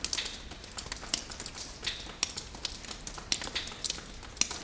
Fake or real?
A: real